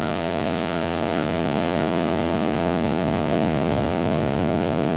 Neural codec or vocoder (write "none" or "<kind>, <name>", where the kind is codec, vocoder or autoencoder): vocoder, Vocos